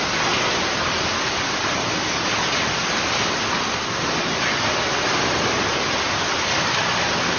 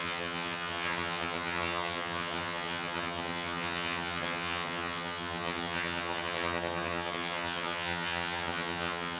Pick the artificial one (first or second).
second